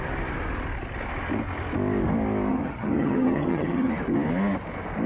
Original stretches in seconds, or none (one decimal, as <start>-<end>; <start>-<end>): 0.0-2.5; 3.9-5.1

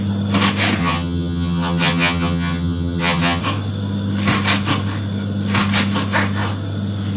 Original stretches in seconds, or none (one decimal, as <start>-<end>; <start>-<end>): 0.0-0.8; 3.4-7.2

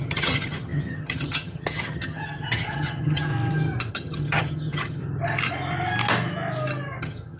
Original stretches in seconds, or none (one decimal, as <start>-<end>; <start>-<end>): 3.3-3.9; 5.0-7.0

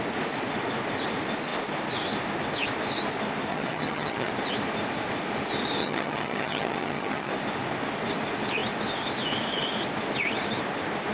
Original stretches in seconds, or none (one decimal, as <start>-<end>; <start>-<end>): 0.0-3.5; 4.3-5.8; 7.3-11.1

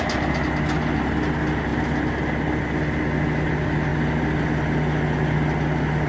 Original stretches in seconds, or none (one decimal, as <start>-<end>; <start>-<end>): 0.0-6.1

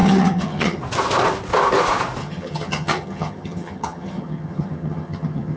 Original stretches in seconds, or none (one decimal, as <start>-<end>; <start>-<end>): 0.8-2.2

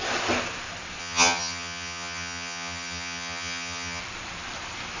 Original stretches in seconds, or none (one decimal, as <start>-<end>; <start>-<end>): 0.0-1.0; 4.0-5.0

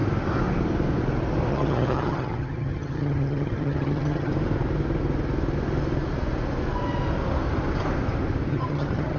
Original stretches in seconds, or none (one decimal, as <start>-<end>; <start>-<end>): 0.0-1.5; 4.3-8.5